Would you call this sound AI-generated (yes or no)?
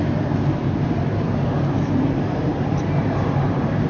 yes